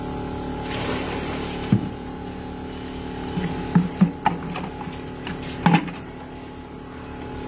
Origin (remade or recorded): recorded